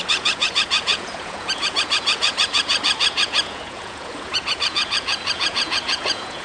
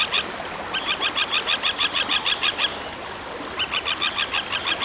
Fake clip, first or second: first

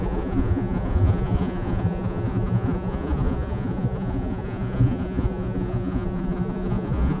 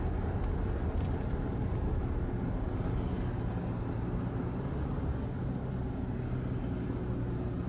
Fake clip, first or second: first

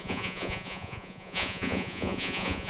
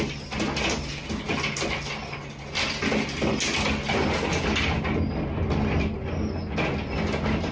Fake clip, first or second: first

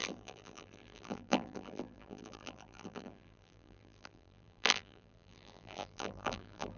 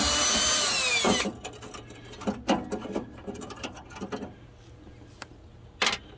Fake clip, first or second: first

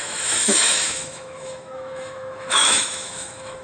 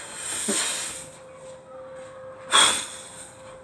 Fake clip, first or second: first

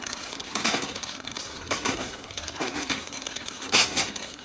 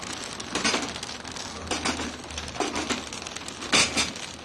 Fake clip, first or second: first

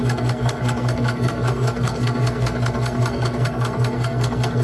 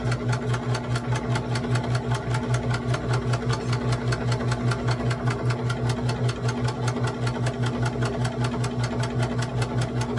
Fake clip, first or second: first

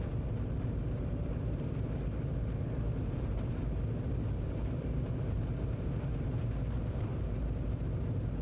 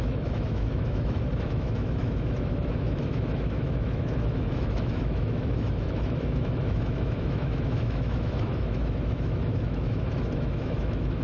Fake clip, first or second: second